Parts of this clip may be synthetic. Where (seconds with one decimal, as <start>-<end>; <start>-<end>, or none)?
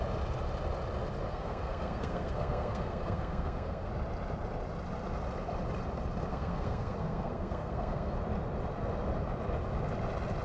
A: 1.3-3.9; 6.3-8.1